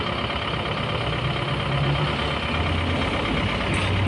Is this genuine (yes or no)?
yes